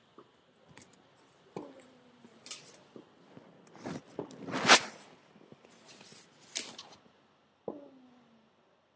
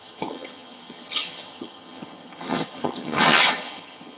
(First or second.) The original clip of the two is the first